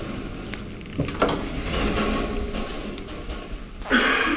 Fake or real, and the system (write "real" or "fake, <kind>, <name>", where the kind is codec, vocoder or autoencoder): real